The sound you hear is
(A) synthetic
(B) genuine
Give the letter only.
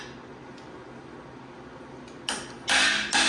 B